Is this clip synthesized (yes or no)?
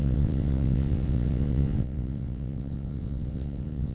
yes